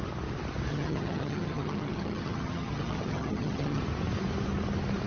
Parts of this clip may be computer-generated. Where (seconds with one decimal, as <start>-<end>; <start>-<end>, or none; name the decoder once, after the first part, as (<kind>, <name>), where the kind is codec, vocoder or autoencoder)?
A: 0.7-3.8 (vocoder, HiFi-GAN)